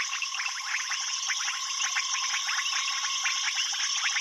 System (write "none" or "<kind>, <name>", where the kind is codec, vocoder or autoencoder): none